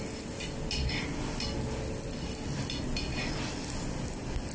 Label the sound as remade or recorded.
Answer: recorded